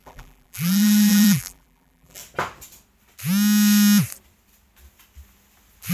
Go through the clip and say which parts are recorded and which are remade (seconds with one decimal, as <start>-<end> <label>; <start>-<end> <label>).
0.0-2.2 remade; 2.2-5.9 recorded